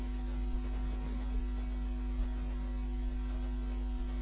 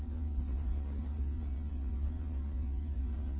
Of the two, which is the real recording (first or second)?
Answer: first